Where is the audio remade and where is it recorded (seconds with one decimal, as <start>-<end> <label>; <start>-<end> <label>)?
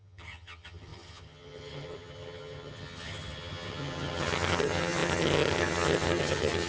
0.0-6.7 remade